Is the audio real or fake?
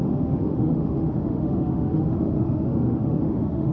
fake